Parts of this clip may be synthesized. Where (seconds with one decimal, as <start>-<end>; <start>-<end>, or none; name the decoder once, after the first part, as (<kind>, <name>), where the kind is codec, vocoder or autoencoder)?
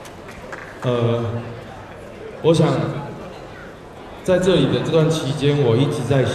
3.6-4.9 (vocoder, Vocos)